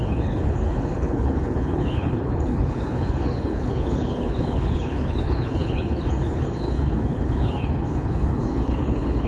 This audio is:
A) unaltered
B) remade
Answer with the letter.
B